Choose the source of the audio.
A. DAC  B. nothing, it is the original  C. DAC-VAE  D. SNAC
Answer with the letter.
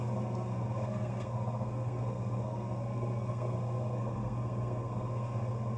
D